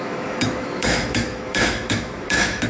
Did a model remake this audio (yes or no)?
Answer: yes